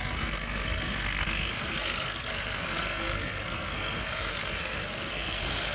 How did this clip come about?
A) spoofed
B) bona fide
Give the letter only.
A